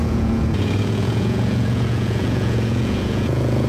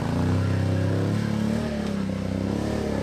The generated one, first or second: first